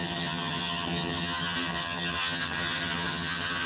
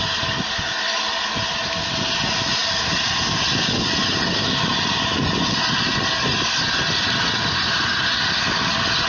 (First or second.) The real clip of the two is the second